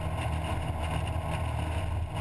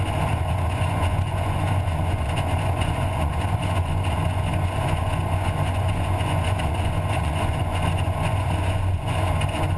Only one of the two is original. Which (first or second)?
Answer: first